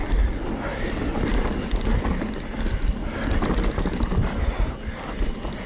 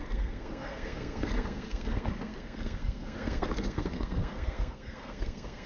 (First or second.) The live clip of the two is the first